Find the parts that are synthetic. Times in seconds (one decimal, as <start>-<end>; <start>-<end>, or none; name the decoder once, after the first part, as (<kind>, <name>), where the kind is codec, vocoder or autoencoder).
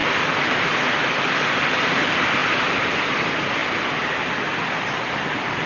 0.9-2.4 (vocoder, BigVGAN v2); 3.1-3.6; 4.4-5.7